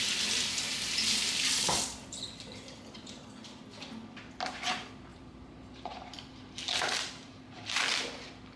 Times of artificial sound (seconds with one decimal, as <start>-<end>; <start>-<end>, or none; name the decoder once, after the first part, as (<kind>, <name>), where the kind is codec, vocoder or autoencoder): 5.1-7.9 (vocoder, BigVGAN v2)